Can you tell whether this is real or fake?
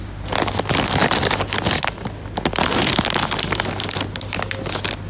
real